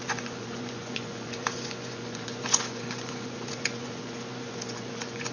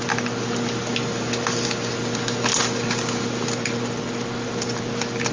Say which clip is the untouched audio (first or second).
second